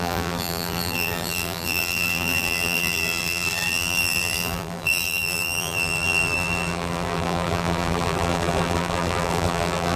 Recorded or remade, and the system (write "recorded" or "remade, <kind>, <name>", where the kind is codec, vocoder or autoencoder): remade, vocoder, BigVGAN v2